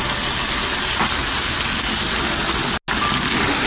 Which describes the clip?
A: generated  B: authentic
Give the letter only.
B